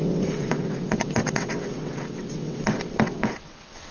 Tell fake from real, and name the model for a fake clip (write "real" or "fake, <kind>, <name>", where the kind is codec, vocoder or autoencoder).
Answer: fake, vocoder, WaveNeXt